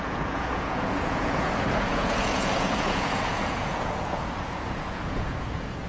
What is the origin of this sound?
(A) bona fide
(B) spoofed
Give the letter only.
B